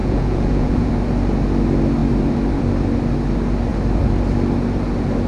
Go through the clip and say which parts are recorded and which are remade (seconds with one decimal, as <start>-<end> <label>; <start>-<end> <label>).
0.0-0.9 remade; 0.9-5.3 recorded

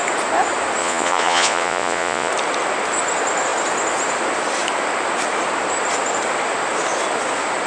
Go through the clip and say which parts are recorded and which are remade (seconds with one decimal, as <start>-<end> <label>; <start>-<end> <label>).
0.0-0.8 recorded; 0.8-2.3 remade; 2.3-7.7 recorded

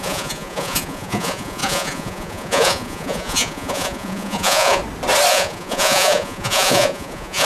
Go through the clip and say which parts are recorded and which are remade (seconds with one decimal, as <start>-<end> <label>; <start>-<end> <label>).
0.0-4.8 remade; 4.8-5.3 recorded; 5.3-7.4 remade